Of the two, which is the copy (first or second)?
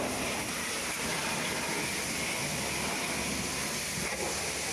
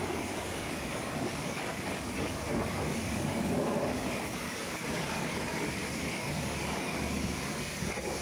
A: second